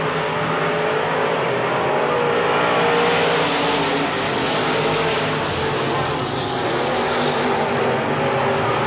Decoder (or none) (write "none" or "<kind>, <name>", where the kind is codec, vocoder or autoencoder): none